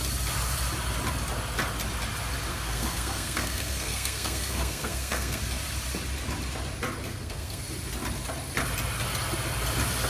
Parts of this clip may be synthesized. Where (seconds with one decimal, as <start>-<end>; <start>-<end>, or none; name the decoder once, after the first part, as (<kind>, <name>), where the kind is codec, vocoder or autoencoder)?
2.5-5.4 (codec, SNAC); 7.1-7.6